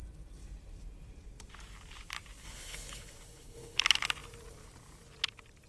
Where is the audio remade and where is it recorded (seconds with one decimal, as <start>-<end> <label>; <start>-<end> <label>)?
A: 0.0-2.4 recorded; 2.4-3.8 remade; 3.8-5.7 recorded